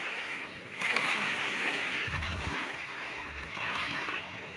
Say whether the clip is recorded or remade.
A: remade